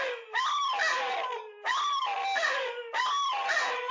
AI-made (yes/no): no